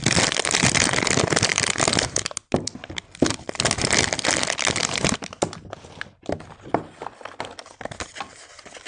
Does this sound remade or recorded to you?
recorded